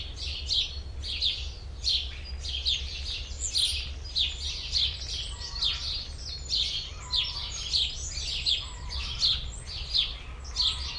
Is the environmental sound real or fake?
real